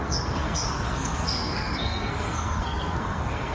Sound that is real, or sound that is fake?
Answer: fake